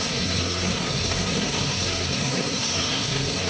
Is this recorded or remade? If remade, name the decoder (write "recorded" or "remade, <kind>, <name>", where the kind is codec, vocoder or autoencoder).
remade, codec, SNAC